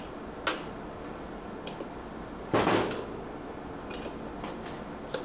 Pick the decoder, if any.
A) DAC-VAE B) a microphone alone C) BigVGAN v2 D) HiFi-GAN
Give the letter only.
B